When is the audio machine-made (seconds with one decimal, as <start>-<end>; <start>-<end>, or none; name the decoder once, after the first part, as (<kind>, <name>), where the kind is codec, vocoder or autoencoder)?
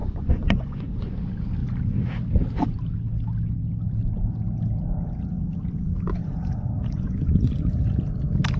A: 0.0-1.2 (vocoder, Vocos); 6.2-7.8